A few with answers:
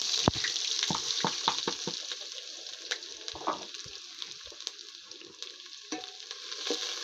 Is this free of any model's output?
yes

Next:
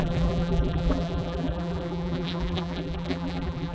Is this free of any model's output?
no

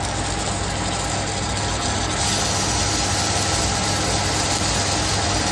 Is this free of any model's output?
yes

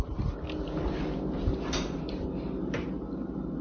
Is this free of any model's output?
yes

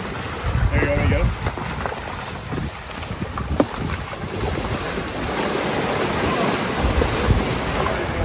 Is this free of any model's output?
yes